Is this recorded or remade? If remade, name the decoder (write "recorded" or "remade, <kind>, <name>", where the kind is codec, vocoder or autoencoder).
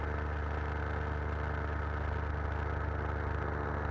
recorded